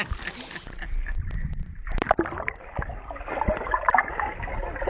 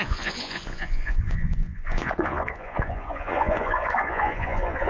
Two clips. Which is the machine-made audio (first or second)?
second